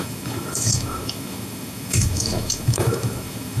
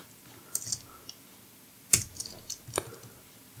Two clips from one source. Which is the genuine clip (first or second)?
second